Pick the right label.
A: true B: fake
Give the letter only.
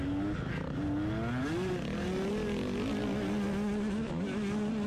A